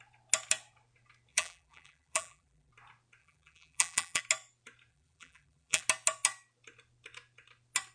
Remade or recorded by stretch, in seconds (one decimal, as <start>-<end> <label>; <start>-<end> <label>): 0.0-1.3 recorded; 1.3-2.7 remade; 2.7-3.2 recorded; 3.2-4.2 remade; 4.2-4.9 recorded; 4.9-5.8 remade; 5.8-7.9 recorded